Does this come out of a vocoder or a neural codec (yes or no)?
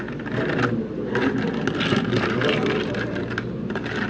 no